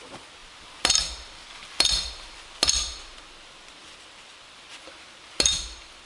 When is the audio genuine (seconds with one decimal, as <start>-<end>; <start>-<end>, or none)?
0.0-6.1